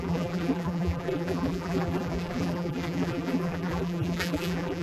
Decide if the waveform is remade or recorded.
remade